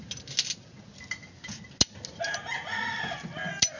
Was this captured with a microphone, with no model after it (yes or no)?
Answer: yes